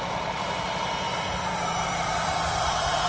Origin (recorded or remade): remade